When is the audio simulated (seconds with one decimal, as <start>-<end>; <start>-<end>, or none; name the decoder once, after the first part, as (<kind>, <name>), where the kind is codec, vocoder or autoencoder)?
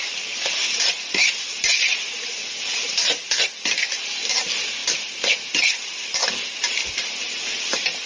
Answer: none